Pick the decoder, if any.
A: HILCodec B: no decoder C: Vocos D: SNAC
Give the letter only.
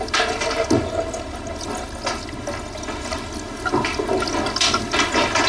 B